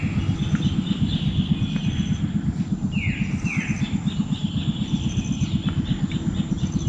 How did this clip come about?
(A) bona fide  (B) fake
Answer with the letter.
A